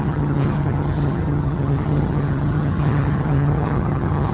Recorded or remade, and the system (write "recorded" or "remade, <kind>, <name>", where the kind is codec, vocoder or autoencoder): remade, vocoder, HiFi-GAN